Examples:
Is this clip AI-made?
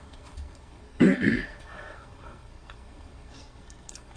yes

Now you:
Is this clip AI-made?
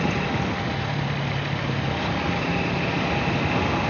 no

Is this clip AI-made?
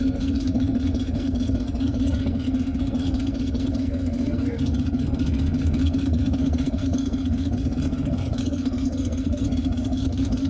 yes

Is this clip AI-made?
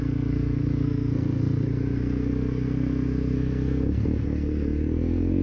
yes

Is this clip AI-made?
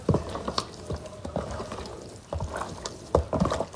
no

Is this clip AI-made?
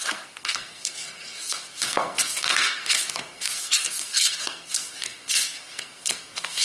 yes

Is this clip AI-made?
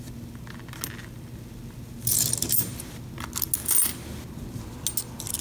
no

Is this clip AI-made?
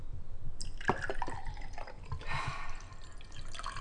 no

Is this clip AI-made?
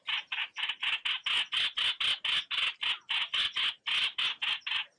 no